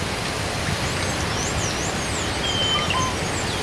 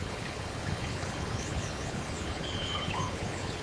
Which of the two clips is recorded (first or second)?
first